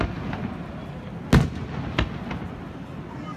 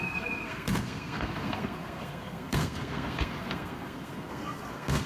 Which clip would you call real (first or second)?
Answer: first